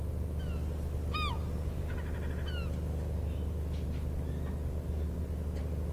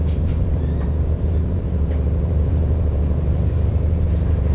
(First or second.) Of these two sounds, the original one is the first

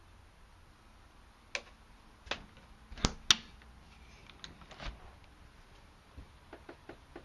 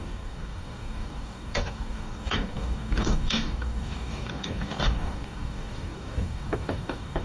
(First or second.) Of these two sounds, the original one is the first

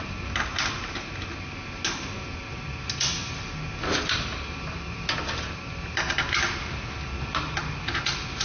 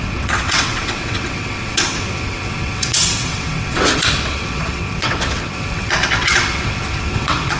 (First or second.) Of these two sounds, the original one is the first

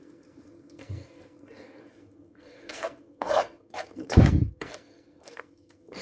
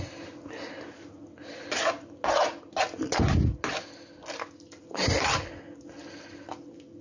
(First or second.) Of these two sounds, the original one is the second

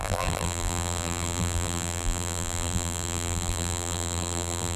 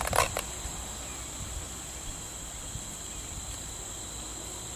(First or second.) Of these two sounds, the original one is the second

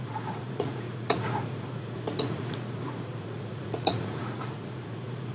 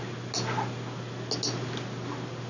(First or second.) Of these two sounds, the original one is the second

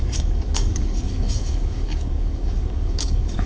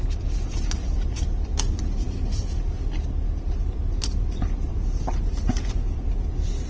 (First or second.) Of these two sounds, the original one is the second